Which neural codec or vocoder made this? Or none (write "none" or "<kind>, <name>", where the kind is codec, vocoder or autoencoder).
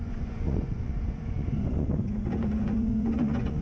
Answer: vocoder, Vocos